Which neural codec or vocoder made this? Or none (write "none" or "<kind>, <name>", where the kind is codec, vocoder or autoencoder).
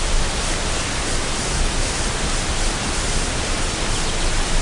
none